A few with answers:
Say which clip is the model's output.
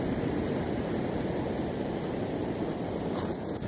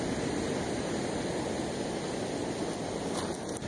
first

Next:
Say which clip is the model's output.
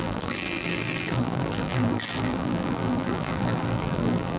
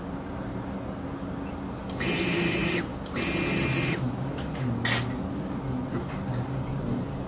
first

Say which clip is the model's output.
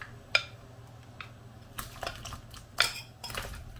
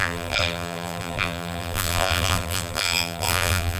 second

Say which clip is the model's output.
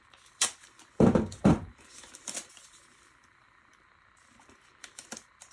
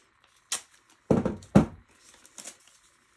first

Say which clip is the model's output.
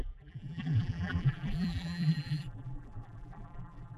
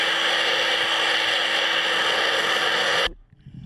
first